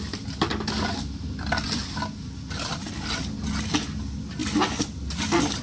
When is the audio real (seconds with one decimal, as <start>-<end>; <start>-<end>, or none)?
0.0-5.6